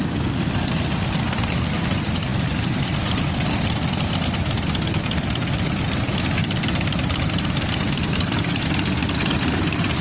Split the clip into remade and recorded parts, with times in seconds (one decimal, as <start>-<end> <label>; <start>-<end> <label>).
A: 0.0-2.3 recorded; 2.3-4.1 remade; 4.1-6.4 recorded; 6.4-9.3 remade; 9.3-10.0 recorded